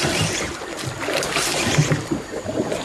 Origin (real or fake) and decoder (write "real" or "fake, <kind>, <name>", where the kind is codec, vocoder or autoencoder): real